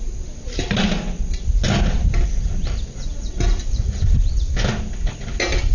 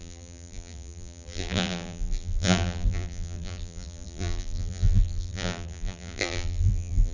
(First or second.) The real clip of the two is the first